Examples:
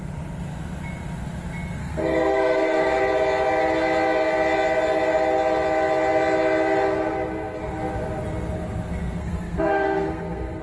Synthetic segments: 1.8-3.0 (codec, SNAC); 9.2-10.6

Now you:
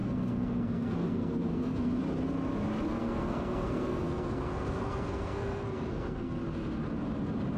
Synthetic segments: 0.0-2.0 (codec, SNAC); 3.0-6.4